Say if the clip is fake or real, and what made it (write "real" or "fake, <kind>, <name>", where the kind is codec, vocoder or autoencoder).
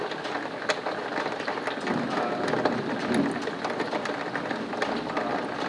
real